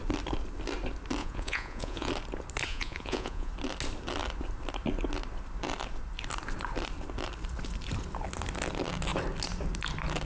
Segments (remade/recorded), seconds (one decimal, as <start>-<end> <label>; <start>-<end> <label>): 0.0-1.2 recorded; 1.2-2.1 remade; 2.1-2.7 recorded; 2.7-3.5 remade; 3.5-10.3 recorded